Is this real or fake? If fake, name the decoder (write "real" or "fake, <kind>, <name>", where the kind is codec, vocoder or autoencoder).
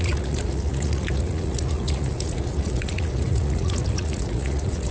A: fake, vocoder, Vocos